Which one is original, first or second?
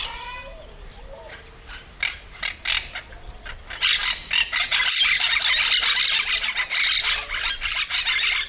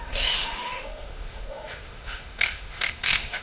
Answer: first